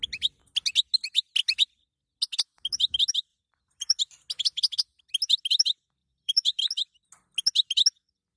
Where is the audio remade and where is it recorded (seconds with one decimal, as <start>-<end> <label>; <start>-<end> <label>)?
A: 0.0-3.3 recorded; 3.3-4.0 remade; 4.0-6.0 recorded; 6.0-6.6 remade; 6.6-8.4 recorded